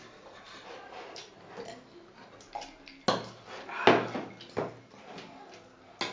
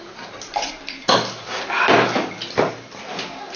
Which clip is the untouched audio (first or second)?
first